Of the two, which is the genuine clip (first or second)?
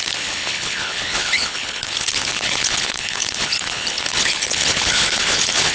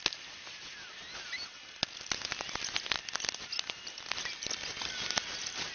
second